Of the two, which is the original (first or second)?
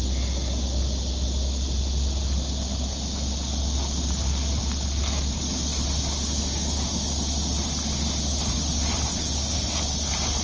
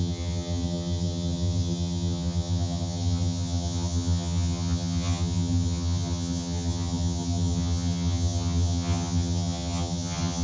first